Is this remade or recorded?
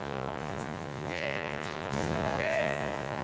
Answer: remade